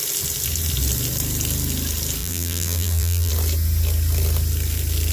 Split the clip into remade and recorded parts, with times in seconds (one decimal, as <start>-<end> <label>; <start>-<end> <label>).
0.0-2.2 recorded; 2.2-3.3 remade; 3.3-5.1 recorded